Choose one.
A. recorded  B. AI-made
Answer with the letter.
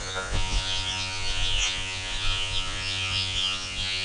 B